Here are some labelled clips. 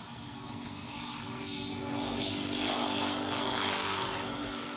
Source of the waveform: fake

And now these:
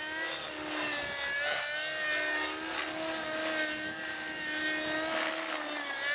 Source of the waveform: real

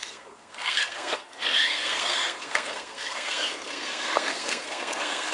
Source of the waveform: fake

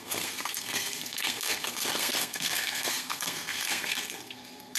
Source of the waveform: fake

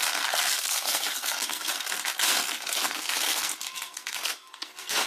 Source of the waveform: fake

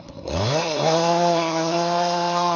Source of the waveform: fake